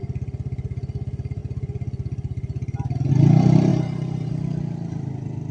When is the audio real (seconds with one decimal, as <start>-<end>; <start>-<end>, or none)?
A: 0.0-3.7; 4.3-5.5